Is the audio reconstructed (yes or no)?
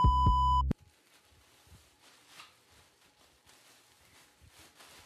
no